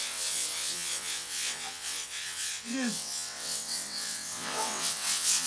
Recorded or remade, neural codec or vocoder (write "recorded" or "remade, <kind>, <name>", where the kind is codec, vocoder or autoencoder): remade, vocoder, WaveNeXt